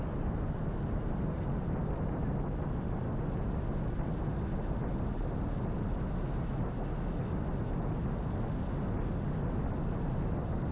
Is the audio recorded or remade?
recorded